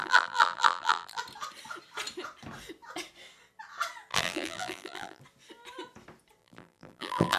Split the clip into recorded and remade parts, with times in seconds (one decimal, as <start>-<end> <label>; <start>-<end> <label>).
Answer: 0.0-1.2 remade; 1.2-4.1 recorded; 4.1-5.2 remade; 5.2-6.4 recorded; 6.4-7.4 remade